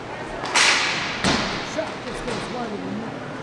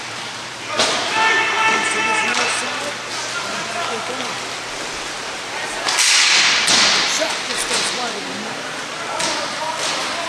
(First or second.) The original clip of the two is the first